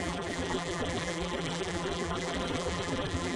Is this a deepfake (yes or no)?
yes